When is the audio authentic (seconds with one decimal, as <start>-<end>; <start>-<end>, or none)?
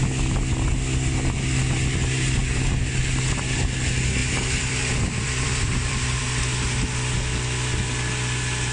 0.0-4.2; 6.2-8.7